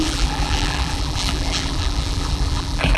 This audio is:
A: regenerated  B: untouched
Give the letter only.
A